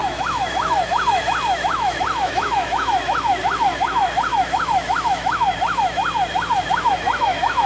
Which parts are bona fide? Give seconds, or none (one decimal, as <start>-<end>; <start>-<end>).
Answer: 6.0-6.7